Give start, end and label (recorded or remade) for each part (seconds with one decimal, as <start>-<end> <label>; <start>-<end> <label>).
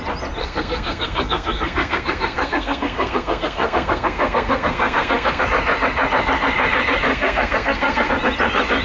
0.0-0.4 recorded; 0.4-5.4 remade; 5.4-7.1 recorded; 7.1-8.1 remade; 8.1-8.8 recorded